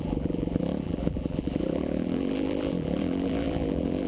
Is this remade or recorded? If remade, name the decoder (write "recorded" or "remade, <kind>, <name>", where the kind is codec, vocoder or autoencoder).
remade, vocoder, BigVGAN v2